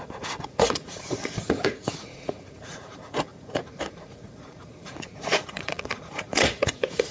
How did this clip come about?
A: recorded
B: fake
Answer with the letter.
B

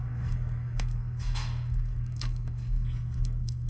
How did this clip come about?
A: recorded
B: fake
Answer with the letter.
B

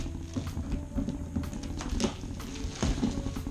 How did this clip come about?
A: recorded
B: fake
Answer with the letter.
A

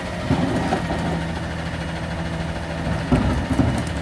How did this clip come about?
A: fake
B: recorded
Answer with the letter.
B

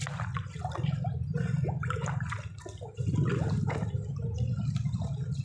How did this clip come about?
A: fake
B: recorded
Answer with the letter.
B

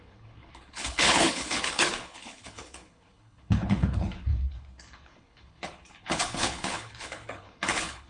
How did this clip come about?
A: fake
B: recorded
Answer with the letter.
A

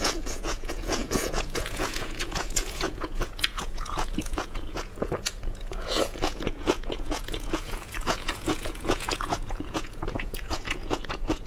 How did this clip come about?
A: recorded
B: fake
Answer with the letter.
B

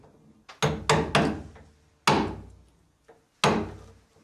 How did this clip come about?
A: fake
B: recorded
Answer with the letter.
B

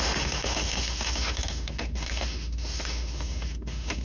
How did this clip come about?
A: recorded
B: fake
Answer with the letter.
B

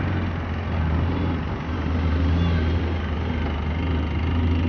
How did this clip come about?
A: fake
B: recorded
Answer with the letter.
B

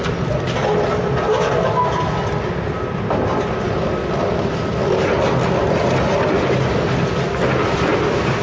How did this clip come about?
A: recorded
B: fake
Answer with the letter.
A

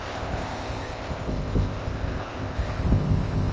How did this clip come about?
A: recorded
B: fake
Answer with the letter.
B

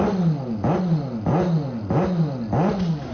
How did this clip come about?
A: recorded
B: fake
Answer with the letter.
A